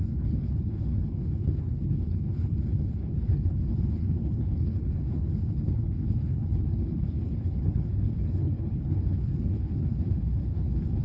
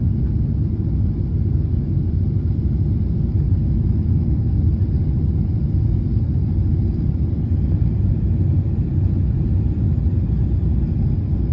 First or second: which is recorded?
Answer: second